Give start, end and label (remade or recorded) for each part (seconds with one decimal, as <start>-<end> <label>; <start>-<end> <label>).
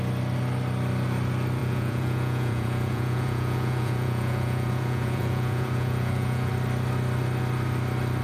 0.0-1.6 recorded; 1.6-6.5 remade; 6.5-8.2 recorded